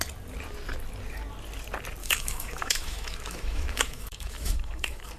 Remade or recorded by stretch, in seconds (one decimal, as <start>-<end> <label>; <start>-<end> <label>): 0.0-2.0 recorded; 2.0-5.2 remade